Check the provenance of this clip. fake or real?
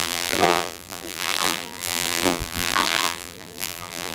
fake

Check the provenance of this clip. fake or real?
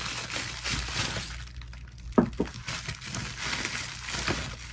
real